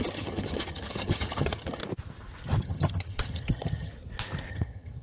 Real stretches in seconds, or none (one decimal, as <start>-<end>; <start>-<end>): 1.8-2.6; 3.9-4.5